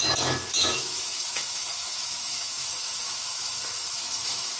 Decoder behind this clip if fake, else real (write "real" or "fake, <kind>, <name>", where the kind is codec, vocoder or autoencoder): fake, autoencoder, DAC-VAE